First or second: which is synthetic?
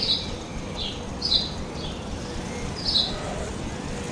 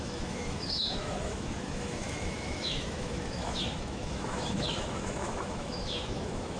second